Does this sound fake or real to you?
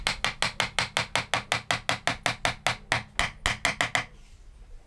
real